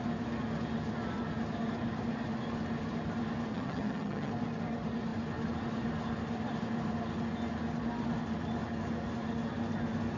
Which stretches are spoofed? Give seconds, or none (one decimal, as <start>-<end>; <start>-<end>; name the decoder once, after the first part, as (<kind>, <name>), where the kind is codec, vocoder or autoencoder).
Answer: 3.5-4.3 (vocoder, HiFi-GAN)